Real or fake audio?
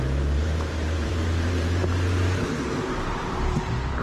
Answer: fake